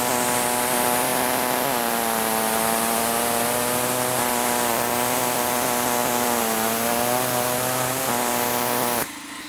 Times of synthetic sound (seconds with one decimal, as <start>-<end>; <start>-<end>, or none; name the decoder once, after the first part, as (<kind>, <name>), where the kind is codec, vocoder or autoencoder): none